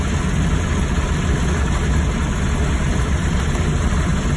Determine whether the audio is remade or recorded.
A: recorded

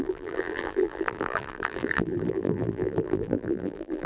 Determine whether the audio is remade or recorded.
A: remade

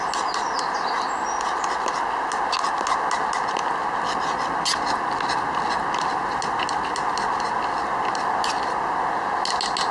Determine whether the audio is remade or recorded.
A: recorded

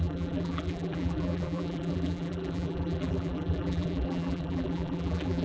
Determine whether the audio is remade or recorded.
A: remade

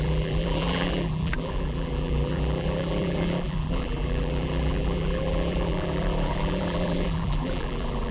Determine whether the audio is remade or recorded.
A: remade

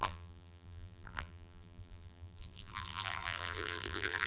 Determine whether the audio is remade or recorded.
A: remade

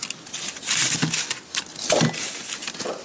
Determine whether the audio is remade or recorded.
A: recorded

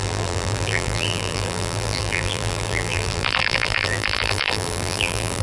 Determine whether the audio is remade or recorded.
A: remade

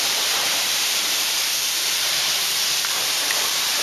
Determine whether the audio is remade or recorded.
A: remade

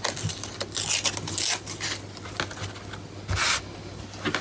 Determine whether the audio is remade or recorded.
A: recorded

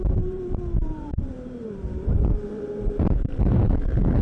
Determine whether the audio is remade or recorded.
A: remade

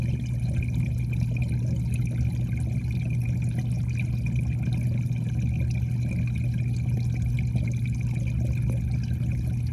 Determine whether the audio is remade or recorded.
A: recorded